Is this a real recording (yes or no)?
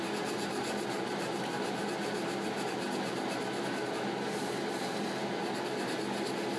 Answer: yes